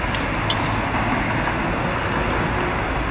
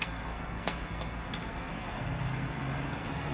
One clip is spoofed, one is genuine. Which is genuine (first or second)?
first